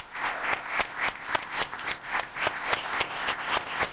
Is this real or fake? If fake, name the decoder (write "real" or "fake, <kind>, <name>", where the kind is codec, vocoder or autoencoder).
fake, codec, ZipCodec